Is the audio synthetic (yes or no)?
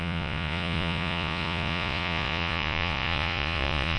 yes